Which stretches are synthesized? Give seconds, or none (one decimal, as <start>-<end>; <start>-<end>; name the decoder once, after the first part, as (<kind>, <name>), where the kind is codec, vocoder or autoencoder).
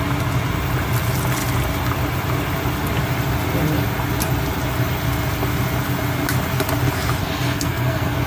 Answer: 7.2-8.3 (codec, SNAC)